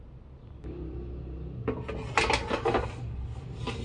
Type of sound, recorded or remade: recorded